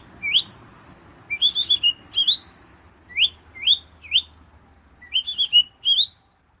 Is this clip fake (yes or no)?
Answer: no